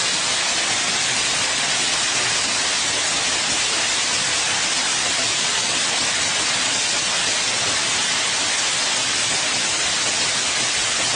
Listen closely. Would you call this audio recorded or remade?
recorded